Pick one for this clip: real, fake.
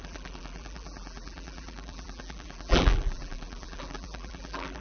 fake